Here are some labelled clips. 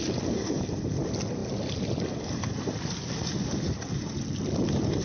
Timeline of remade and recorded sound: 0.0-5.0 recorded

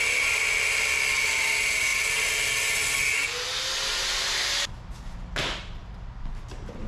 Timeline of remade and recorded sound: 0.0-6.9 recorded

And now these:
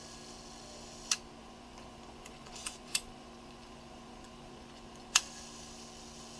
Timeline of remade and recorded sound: 0.0-1.4 recorded; 1.4-5.2 remade; 5.2-6.4 recorded